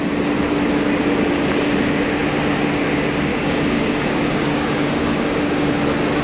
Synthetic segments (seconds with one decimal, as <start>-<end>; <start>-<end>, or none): 3.3-5.7